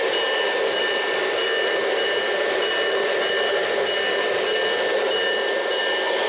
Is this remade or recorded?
recorded